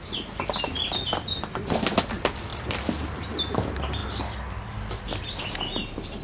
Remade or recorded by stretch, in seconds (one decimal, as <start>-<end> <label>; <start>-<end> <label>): 0.0-6.2 recorded